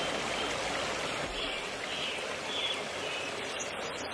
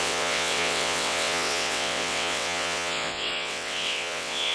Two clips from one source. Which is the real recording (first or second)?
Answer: first